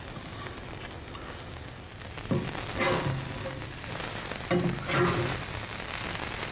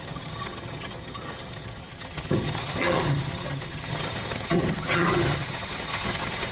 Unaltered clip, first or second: first